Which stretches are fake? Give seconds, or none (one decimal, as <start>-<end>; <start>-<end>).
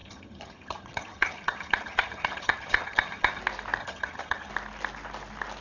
0.0-3.4; 3.8-4.5